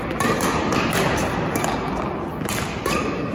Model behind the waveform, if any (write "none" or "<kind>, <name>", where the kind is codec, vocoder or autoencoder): none